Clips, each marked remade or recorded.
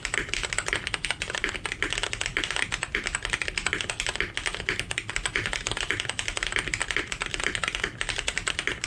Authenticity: recorded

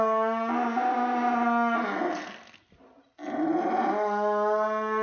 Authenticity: recorded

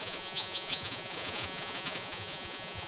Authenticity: remade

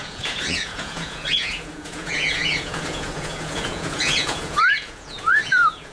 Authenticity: remade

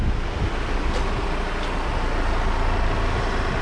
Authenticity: recorded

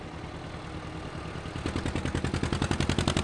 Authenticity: recorded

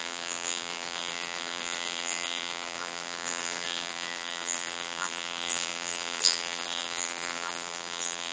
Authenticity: remade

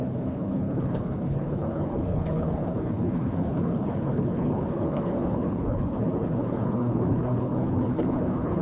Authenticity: remade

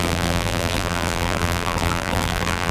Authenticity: remade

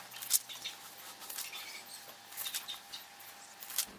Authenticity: recorded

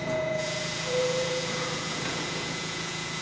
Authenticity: remade